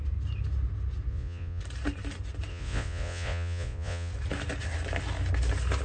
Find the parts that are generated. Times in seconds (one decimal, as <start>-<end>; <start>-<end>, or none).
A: 1.1-1.6; 2.5-4.1